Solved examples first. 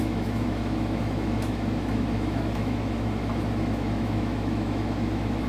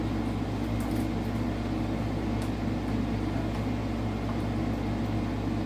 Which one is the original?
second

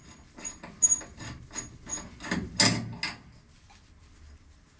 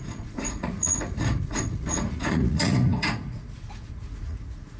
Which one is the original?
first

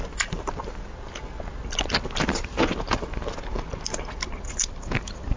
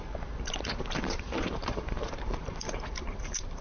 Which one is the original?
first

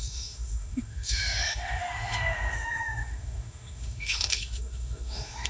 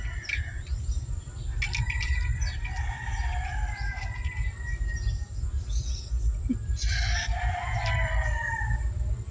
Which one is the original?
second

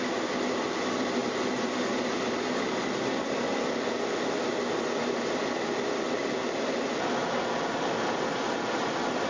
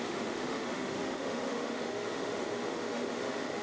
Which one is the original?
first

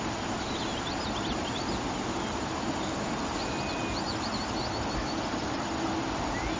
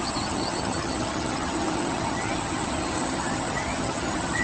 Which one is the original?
first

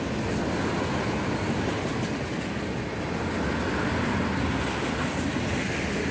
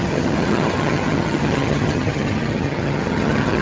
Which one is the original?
first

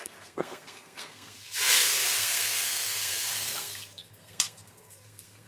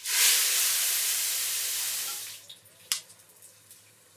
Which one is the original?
second